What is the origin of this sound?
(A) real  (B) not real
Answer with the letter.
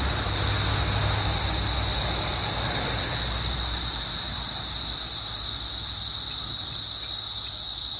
A